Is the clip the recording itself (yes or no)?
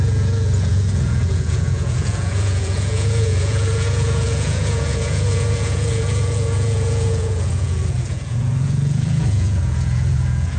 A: no